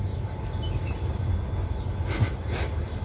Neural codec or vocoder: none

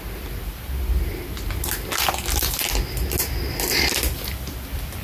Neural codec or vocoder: none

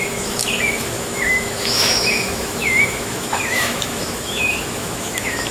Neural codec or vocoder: autoencoder, DAC-VAE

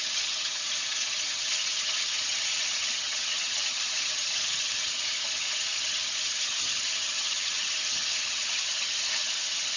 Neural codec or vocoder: vocoder, HiFi-GAN